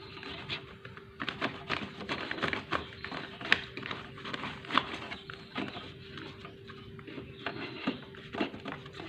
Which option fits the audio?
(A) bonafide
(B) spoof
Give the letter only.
A